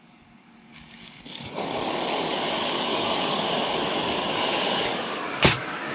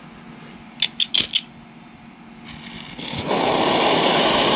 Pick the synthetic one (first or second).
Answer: first